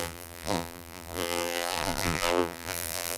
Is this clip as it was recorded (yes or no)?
no